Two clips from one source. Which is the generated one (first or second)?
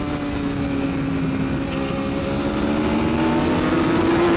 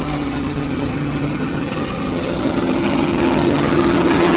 second